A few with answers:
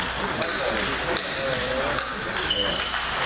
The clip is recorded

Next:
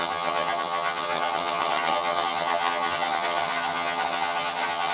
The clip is remade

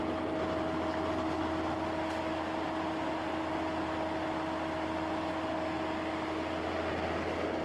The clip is recorded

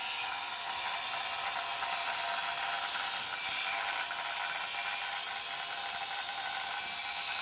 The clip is recorded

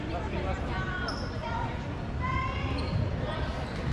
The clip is recorded